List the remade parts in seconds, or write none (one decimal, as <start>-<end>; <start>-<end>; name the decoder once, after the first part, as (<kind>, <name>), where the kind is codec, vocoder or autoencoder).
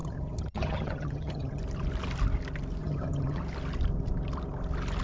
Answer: 0.0-1.6 (vocoder, HiFi-GAN); 2.8-3.4